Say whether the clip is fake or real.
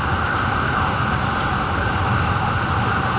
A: real